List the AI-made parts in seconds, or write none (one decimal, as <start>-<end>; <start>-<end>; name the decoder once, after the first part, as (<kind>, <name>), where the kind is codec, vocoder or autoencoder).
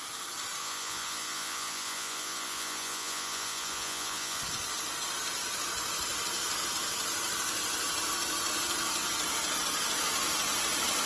0.6-4.4 (vocoder, Vocos)